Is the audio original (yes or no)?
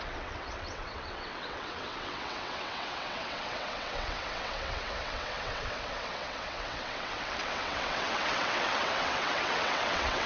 no